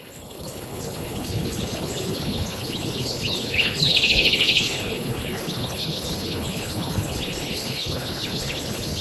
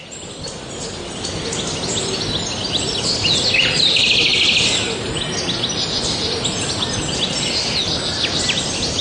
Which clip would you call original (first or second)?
second